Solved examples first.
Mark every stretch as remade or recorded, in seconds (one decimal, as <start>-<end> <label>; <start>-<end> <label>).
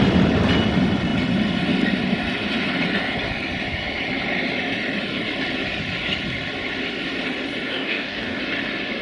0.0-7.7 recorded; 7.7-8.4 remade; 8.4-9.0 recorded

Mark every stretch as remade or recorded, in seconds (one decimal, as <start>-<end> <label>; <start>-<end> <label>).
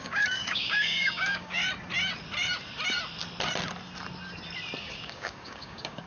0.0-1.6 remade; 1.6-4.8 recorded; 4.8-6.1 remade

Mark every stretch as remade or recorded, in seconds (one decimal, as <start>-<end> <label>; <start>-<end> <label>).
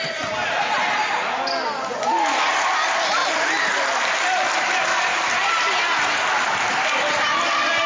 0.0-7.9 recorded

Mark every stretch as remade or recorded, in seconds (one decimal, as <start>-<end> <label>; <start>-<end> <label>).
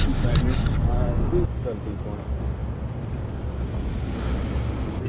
0.0-5.1 recorded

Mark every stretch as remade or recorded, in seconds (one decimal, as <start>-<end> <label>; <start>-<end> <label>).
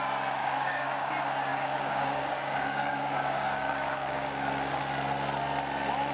0.0-0.4 recorded; 0.4-1.1 remade; 1.1-1.5 recorded; 1.5-4.8 remade; 4.8-6.1 recorded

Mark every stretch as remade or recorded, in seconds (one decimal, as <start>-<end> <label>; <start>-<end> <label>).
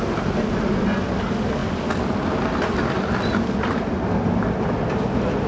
0.0-5.5 recorded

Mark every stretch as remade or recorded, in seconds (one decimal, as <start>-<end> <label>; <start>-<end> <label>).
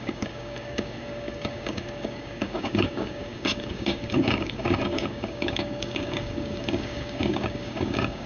0.0-8.3 remade